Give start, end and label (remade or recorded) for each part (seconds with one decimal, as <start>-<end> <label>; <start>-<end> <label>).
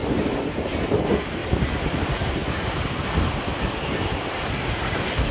0.0-1.4 remade; 1.4-2.0 recorded; 2.0-2.4 remade; 2.4-3.6 recorded; 3.6-5.3 remade